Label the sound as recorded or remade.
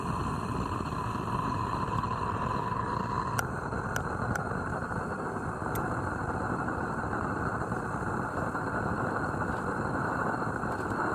recorded